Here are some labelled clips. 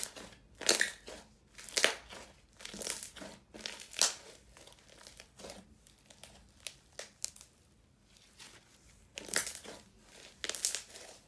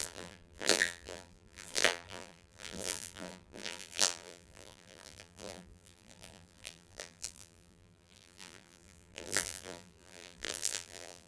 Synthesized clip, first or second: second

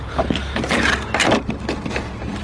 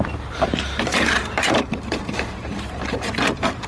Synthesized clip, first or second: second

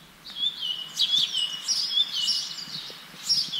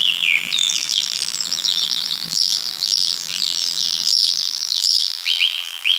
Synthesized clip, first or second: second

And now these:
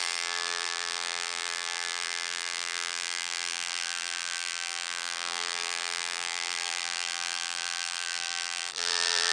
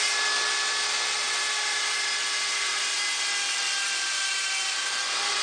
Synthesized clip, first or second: first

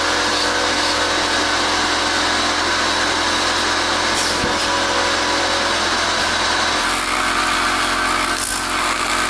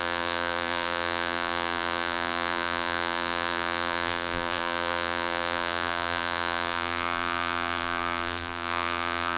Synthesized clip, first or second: second